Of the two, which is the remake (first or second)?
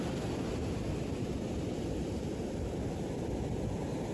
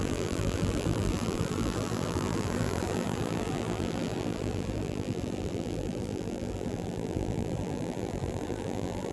second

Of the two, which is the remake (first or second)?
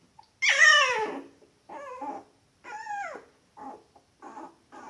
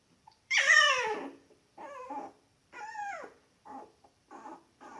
second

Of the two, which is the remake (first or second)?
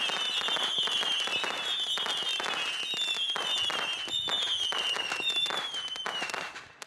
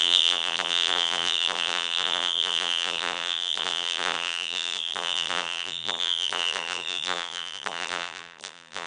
second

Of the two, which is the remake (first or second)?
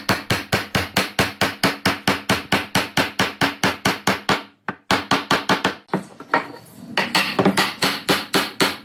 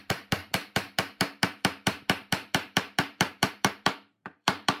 second